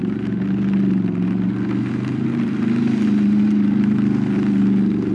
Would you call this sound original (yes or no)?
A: yes